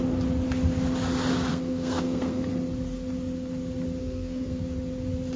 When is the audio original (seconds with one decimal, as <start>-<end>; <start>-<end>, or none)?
0.0-1.5; 2.5-4.0; 4.6-5.4